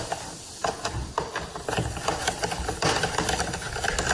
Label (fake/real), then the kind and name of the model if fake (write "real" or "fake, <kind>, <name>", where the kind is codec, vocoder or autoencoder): real